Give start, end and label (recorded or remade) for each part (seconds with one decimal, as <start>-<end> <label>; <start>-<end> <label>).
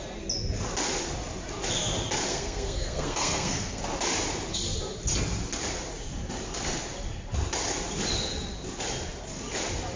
0.0-2.3 recorded; 2.3-3.8 remade; 3.8-10.0 recorded